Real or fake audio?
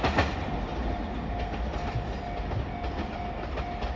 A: real